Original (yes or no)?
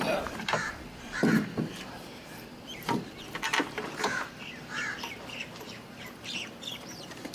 no